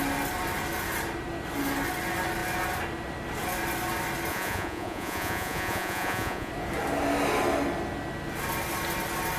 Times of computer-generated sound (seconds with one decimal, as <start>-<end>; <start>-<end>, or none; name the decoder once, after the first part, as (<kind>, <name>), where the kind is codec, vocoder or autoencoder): 4.3-6.5 (vocoder, Vocos)